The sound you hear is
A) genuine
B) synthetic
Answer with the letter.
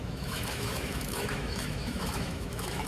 B